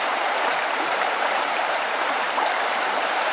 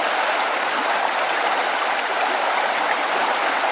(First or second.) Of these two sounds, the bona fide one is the second